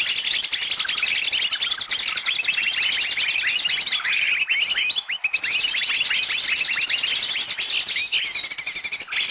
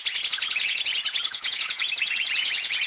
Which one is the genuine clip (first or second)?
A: first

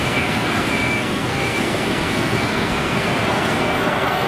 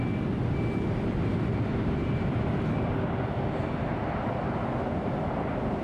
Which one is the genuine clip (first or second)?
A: second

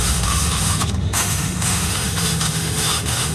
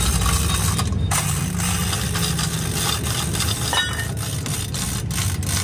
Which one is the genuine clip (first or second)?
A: second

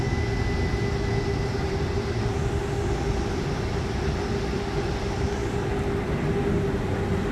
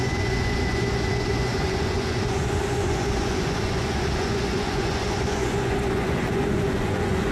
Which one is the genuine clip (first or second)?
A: first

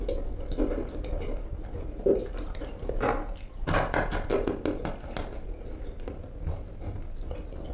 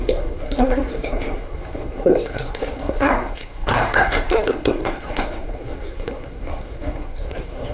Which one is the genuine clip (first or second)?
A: first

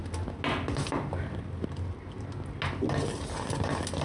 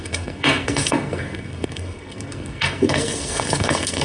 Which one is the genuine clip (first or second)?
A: first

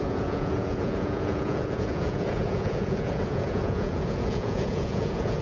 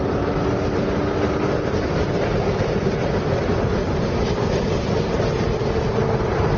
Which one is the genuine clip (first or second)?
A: second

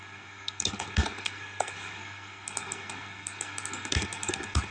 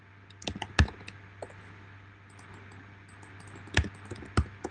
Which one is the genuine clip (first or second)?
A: second